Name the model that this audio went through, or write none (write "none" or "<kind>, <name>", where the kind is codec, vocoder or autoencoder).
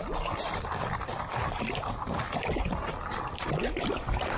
vocoder, BigVGAN v2